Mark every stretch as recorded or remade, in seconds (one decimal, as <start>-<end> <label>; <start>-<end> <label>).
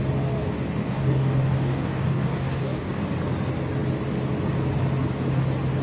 0.0-0.8 recorded; 0.8-3.0 remade; 3.0-5.8 recorded